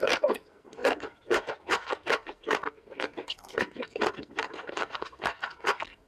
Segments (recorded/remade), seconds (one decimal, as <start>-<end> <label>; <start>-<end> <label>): 0.0-6.1 remade